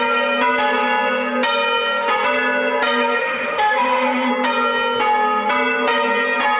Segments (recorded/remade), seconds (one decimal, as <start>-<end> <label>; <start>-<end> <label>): 0.0-3.2 recorded; 3.2-4.3 remade; 4.3-6.6 recorded